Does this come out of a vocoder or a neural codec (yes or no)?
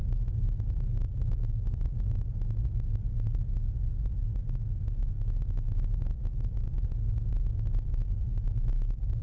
no